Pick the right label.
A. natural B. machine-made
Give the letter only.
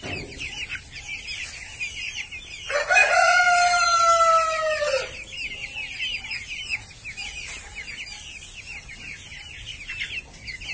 A